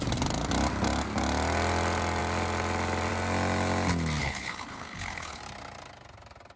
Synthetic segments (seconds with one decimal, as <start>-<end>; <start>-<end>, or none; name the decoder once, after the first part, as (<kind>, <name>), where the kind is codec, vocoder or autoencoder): 4.2-5.4 (codec, HILCodec)